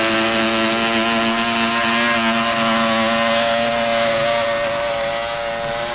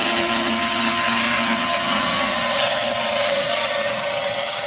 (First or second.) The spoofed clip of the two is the second